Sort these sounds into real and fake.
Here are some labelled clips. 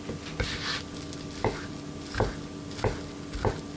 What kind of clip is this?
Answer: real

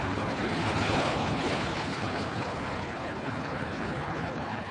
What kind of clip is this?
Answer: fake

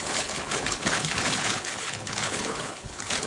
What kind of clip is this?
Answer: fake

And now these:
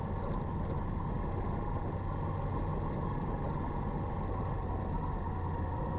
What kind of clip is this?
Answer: real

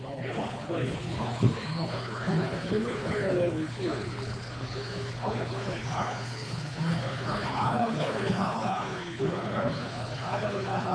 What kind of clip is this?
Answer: fake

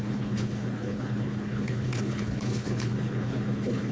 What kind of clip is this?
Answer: fake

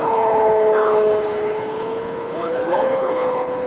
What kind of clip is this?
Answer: fake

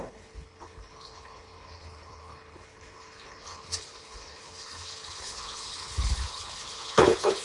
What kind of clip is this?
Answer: fake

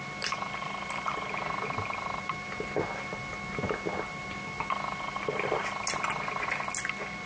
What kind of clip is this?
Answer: real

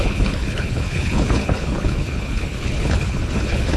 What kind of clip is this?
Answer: fake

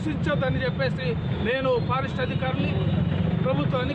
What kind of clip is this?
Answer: real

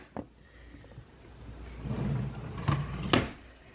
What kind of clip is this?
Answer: real